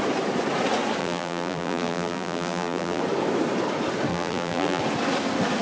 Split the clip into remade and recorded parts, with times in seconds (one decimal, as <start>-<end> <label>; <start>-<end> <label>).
0.0-1.0 recorded; 1.0-3.0 remade; 3.0-4.1 recorded; 4.1-4.8 remade; 4.8-5.6 recorded